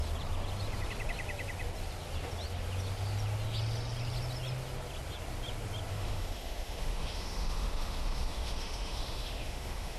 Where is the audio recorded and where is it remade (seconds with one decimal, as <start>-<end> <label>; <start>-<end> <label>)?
0.0-5.9 recorded; 5.9-10.0 remade